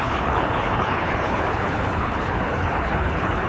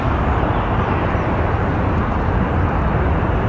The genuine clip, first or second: second